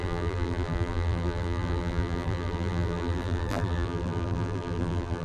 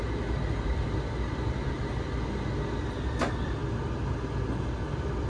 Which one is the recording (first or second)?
second